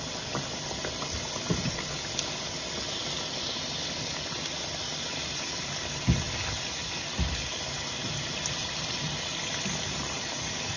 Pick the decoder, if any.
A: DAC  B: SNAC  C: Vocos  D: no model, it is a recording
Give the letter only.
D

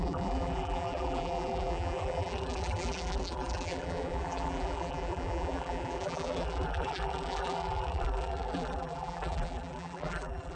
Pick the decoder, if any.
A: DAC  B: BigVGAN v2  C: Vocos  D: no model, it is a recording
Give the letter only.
B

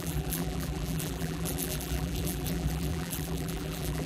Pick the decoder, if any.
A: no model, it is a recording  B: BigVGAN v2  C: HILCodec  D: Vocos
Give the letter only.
B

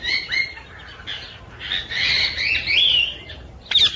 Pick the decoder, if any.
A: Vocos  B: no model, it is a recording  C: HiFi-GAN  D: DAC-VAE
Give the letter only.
B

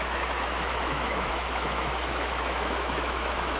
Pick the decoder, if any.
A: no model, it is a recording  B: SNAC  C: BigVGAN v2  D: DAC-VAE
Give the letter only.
D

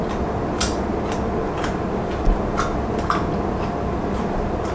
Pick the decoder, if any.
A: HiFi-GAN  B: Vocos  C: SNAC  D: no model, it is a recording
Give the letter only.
D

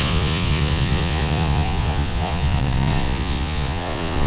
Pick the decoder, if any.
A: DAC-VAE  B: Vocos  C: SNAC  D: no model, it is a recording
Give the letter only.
B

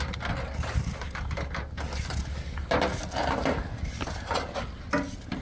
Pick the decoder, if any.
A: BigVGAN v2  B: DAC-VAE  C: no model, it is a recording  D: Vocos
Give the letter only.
C